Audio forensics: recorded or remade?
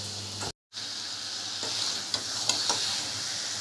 recorded